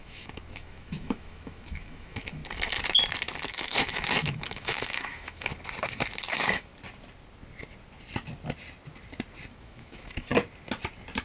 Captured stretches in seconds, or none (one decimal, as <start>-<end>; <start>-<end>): 2.4-3.5; 5.5-6.3; 6.7-9.5; 10.3-11.2